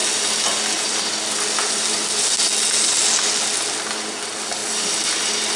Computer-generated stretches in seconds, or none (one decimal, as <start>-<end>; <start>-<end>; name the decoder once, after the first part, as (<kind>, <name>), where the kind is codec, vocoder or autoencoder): none